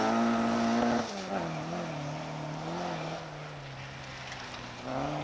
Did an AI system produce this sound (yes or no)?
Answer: no